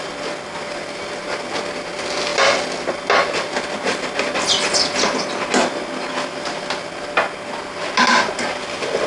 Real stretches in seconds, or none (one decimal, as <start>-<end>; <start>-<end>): 0.0-9.1